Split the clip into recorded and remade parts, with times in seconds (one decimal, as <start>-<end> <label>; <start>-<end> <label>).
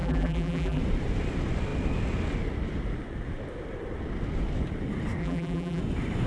0.0-0.8 remade; 0.8-5.2 recorded; 5.2-5.8 remade; 5.8-6.3 recorded